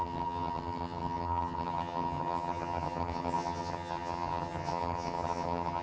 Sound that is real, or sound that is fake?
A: fake